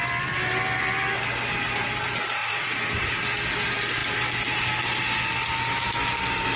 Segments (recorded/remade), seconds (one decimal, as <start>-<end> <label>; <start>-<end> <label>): 0.0-2.4 recorded; 2.4-3.1 remade; 3.1-6.6 recorded